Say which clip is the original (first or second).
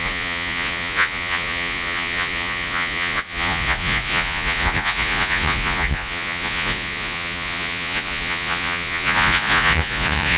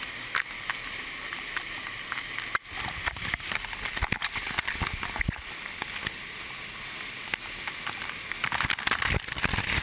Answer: second